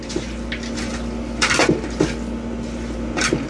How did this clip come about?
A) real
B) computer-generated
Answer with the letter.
A